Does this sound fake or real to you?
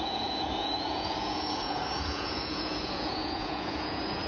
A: fake